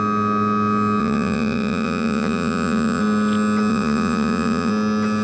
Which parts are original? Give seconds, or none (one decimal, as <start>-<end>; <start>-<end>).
0.0-1.0; 3.0-3.7; 4.7-5.2